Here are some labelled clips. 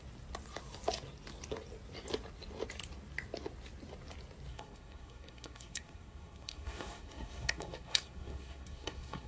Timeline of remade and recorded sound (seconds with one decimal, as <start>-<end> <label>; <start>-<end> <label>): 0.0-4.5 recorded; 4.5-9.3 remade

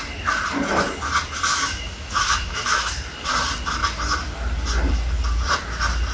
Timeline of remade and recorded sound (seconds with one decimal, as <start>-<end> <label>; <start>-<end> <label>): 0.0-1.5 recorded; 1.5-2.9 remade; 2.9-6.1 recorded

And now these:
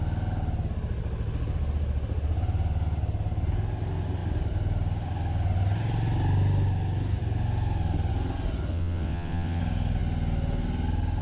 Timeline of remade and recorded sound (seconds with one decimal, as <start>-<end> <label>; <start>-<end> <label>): 0.0-8.7 recorded; 8.7-9.6 remade; 9.6-11.2 recorded

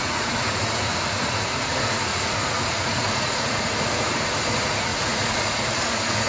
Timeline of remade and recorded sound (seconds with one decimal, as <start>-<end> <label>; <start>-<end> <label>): 0.0-6.3 remade